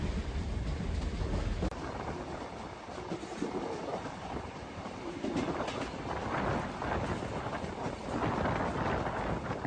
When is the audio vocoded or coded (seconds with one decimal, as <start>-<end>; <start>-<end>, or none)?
3.9-5.0